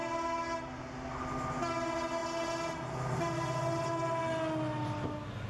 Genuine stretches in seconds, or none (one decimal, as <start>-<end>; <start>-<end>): 0.0-5.5